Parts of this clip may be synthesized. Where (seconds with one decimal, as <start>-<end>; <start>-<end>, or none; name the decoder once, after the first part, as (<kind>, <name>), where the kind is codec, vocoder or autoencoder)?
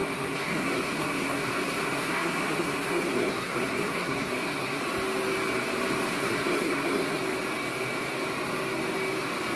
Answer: 0.0-4.8 (codec, SNAC); 6.1-7.2